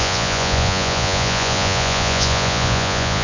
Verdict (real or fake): fake